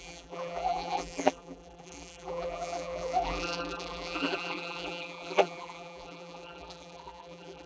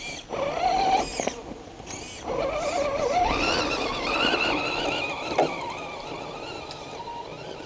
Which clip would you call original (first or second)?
second